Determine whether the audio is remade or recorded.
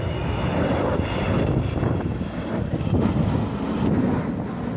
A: recorded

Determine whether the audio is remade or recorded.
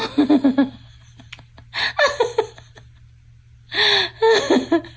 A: recorded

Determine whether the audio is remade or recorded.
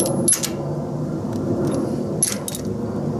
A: recorded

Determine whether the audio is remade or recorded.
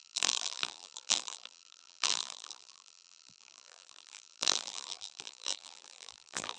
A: remade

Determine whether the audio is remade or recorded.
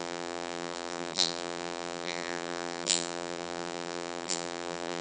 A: remade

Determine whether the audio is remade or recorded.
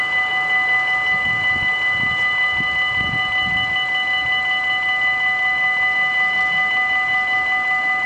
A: recorded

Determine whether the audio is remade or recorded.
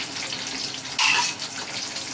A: recorded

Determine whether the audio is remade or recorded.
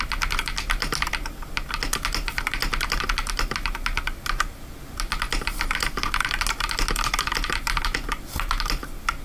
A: recorded